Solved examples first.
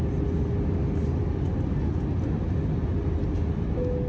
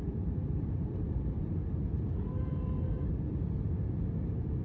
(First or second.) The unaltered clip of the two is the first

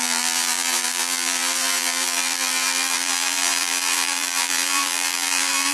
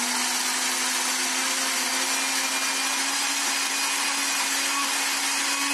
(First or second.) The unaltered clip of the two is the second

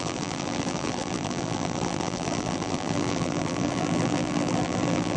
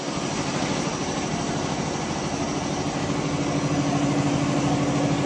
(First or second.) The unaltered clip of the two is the second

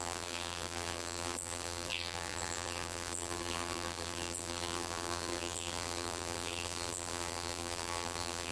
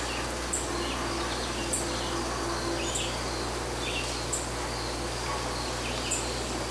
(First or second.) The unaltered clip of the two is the second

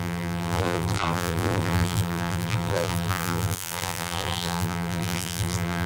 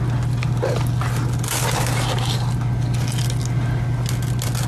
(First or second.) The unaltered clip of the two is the second